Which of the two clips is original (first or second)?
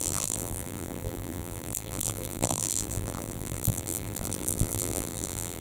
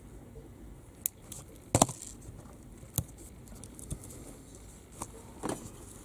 second